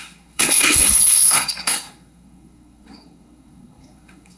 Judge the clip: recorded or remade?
remade